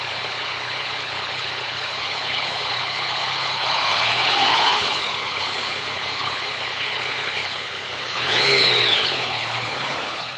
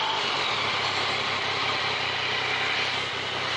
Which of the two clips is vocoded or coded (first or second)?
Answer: first